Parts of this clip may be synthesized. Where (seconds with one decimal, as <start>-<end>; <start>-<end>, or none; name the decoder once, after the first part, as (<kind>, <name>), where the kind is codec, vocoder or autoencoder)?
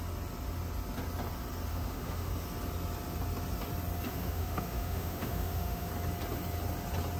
1.7-2.3 (autoencoder, DAC-VAE); 4.1-5.9